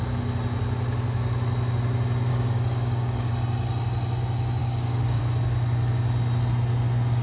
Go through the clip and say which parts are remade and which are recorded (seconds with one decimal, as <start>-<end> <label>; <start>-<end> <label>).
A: 0.0-2.3 recorded; 2.3-3.3 remade; 3.3-4.6 recorded; 4.6-5.2 remade; 5.2-7.2 recorded